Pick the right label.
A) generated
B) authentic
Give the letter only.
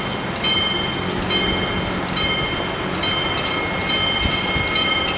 B